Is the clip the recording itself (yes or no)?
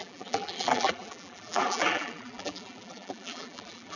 no